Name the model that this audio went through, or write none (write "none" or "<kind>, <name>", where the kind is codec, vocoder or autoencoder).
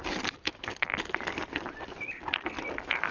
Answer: none